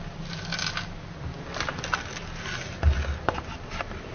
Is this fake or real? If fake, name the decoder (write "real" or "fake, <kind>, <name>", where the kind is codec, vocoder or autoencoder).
real